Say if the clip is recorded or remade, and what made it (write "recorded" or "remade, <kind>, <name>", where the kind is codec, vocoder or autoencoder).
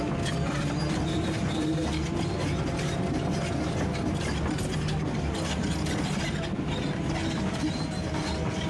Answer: recorded